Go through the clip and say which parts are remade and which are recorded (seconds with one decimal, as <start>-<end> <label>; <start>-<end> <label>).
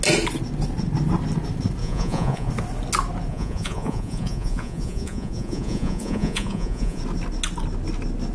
0.0-1.8 recorded; 1.8-2.5 remade; 2.5-3.3 recorded; 3.3-7.0 remade; 7.0-8.3 recorded